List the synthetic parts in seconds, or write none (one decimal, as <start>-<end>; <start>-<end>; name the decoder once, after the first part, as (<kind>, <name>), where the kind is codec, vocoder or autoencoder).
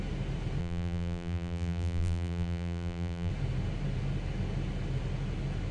0.6-3.3 (vocoder, BigVGAN v2)